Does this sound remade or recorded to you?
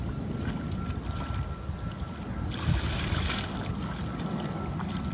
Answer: recorded